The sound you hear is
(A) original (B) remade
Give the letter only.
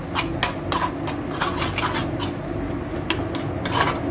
A